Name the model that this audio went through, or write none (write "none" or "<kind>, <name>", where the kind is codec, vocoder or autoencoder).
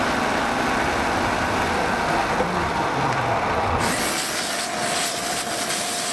none